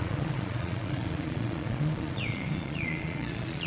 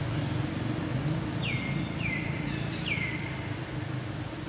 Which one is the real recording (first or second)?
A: second